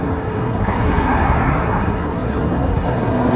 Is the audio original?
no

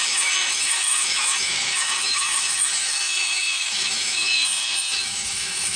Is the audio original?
no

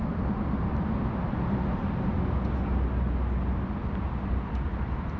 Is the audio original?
yes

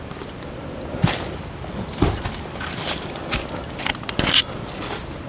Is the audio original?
yes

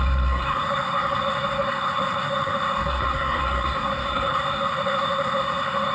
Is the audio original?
no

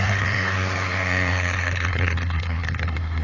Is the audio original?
no